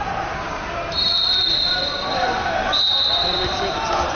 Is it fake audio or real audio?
real